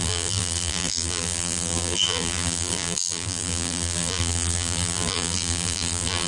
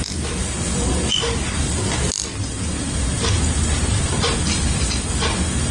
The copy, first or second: first